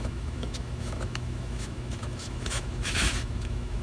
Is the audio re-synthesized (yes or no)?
yes